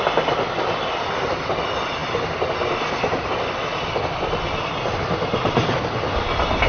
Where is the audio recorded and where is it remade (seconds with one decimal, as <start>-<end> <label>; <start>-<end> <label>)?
0.0-6.7 recorded